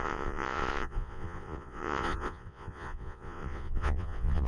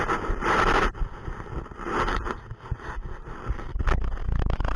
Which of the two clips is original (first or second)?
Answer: second